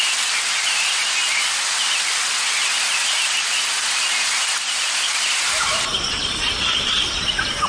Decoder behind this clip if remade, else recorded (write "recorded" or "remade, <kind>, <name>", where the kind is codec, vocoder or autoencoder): recorded